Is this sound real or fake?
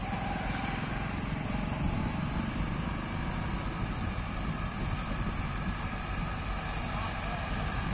real